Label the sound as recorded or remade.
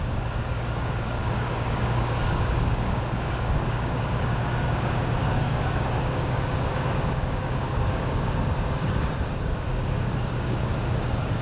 remade